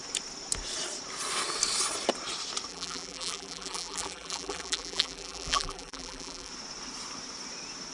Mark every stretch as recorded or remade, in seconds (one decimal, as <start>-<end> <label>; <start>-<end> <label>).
0.0-2.7 recorded; 2.7-6.5 remade; 6.5-7.9 recorded